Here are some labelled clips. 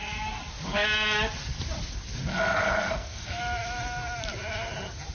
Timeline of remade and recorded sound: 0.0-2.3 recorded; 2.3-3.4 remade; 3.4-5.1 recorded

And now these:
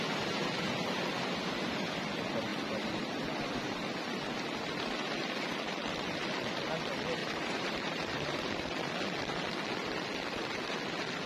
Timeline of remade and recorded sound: 0.0-7.2 recorded; 7.2-8.8 remade; 8.8-11.3 recorded

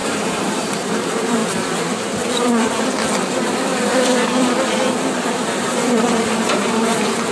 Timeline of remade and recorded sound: 0.0-1.4 remade; 1.4-5.6 recorded; 5.6-7.3 remade

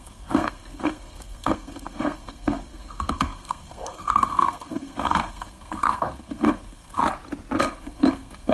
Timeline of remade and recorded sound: 0.0-7.0 remade; 7.0-7.6 recorded; 7.6-8.5 remade

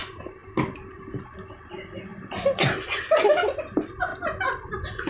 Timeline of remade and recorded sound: 0.0-5.1 recorded